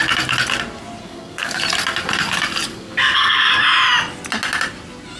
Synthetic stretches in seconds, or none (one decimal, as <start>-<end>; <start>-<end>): 1.0-1.6; 2.7-3.5